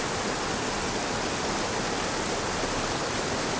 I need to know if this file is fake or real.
real